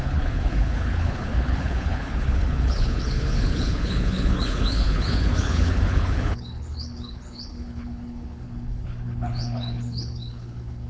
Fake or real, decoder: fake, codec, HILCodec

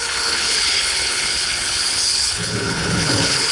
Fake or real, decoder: fake, codec, HILCodec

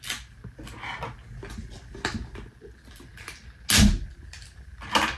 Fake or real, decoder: real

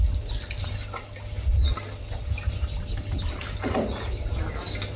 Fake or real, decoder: real